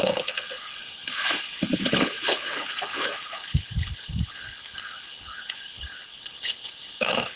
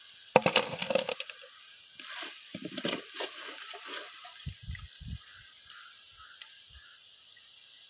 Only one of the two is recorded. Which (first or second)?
second